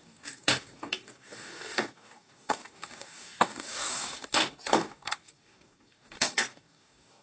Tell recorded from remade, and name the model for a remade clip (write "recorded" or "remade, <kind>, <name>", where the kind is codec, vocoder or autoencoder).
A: remade, codec, DAC